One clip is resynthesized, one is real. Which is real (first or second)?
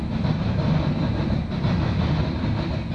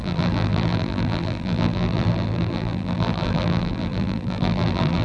first